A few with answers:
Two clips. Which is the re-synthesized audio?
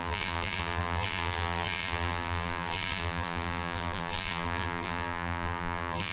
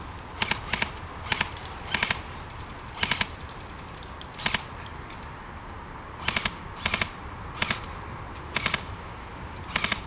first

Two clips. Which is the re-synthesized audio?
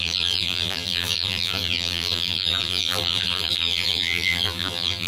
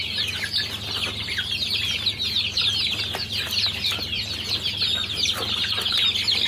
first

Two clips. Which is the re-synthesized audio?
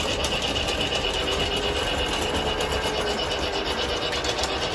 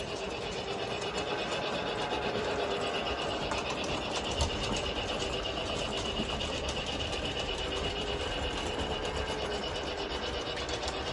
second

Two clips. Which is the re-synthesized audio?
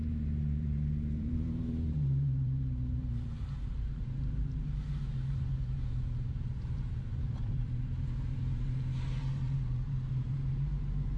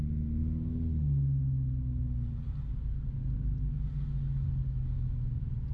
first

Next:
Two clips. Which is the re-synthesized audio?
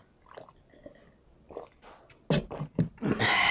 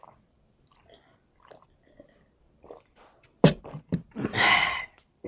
second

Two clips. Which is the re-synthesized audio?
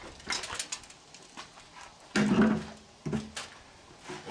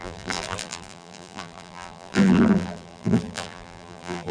second